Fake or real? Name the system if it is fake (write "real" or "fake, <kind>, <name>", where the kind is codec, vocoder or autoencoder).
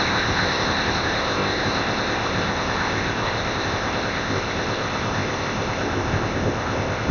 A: fake, codec, ZipCodec